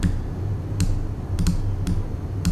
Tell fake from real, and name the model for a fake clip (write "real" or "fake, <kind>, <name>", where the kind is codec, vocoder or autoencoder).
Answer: real